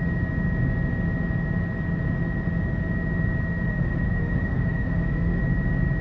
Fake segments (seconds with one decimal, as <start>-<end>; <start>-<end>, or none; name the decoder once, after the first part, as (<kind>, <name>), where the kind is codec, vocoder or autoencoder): 3.7-5.4 (autoencoder, DAC-VAE)